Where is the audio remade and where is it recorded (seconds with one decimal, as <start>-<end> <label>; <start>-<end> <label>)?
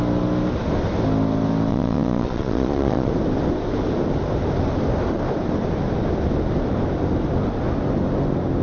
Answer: 0.0-1.7 recorded; 1.7-3.1 remade; 3.1-8.6 recorded